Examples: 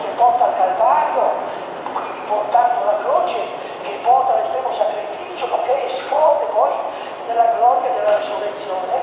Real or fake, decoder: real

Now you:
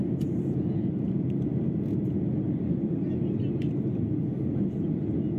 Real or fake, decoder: real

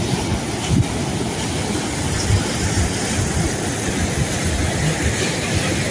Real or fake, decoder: real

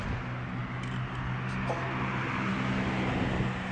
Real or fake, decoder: real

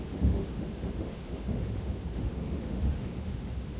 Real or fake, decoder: fake, autoencoder, DAC-VAE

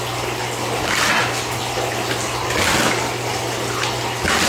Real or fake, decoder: real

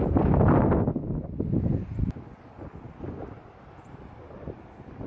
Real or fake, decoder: real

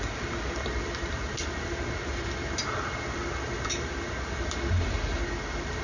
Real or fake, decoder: real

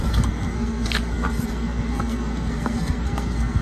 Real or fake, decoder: fake, codec, SNAC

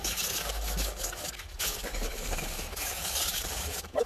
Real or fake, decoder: fake, codec, DAC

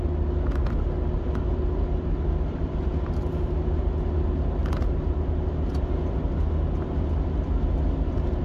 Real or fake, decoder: real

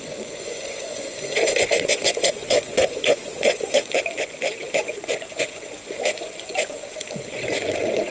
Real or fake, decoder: fake, vocoder, Vocos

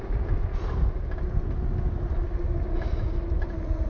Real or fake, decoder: real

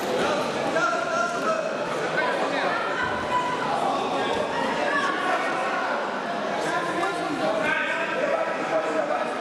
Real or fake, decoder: real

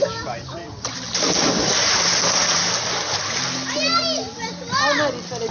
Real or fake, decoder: real